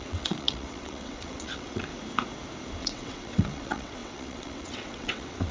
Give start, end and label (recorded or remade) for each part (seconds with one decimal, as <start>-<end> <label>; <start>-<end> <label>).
0.0-1.9 remade; 1.9-2.8 recorded; 2.8-5.5 remade

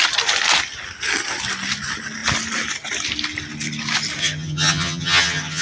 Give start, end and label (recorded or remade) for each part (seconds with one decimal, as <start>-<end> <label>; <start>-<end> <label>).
0.0-4.2 recorded; 4.2-5.6 remade

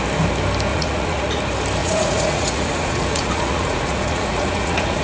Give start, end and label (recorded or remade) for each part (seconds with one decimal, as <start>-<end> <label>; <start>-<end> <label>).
0.0-0.7 recorded; 0.7-1.4 remade; 1.4-1.8 recorded; 1.8-5.0 remade

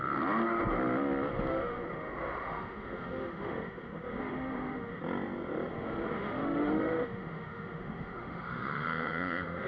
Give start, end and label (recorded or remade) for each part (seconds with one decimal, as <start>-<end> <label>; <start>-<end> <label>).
0.0-1.5 recorded; 1.5-5.0 remade; 5.0-5.7 recorded; 5.7-9.7 remade

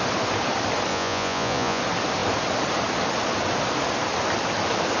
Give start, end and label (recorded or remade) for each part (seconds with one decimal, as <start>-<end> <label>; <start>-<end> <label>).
0.0-0.9 recorded; 0.9-1.8 remade; 1.8-5.0 recorded

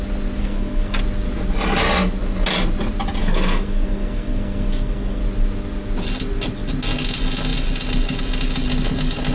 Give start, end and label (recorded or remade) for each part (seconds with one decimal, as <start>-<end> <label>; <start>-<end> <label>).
0.0-0.4 recorded; 0.4-1.0 remade; 1.0-3.2 recorded; 3.2-5.2 remade; 5.2-9.3 recorded